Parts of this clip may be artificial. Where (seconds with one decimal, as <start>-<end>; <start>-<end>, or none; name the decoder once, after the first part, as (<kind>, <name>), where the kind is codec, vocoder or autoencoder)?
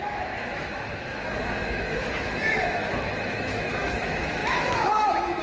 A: 0.0-5.4 (autoencoder, DAC-VAE)